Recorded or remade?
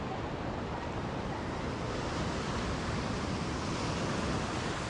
recorded